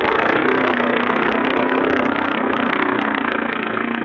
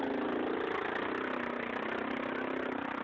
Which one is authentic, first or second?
second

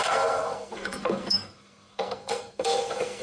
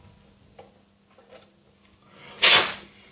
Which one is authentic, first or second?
second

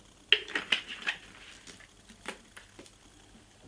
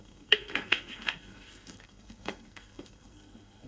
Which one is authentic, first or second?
first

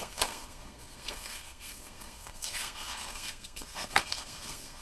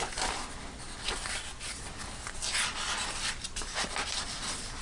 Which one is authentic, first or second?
second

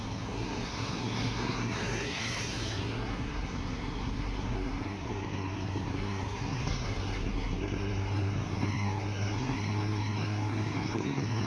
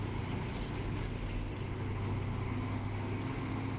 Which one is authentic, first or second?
second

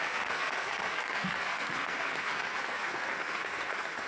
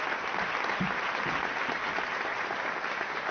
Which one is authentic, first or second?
second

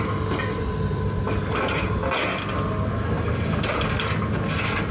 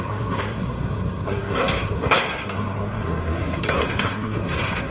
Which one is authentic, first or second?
first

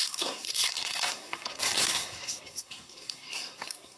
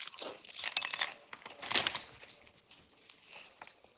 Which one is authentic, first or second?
second